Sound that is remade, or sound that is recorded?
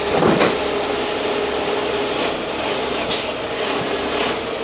recorded